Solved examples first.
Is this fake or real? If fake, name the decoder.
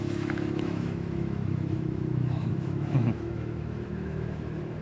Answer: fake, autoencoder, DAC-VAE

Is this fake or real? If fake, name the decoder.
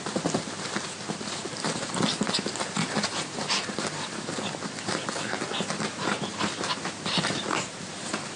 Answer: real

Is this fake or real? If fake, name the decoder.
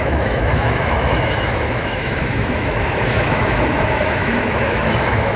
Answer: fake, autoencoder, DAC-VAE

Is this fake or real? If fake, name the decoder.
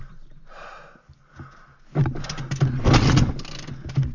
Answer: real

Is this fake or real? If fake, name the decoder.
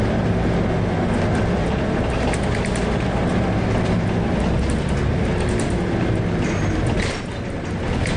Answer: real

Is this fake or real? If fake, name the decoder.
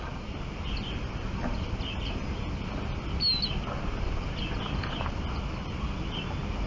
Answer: real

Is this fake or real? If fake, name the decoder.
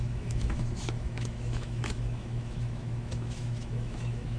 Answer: fake, autoencoder, DAC-VAE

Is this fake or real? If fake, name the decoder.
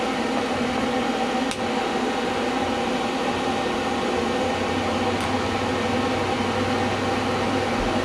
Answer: real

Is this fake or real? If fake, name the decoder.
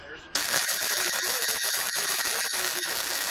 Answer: fake, autoencoder, DAC-VAE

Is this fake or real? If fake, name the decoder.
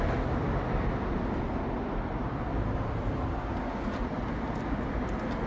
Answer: real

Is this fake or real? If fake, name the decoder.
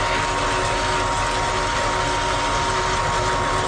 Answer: real